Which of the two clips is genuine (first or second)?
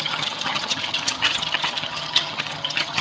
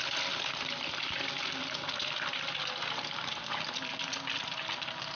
second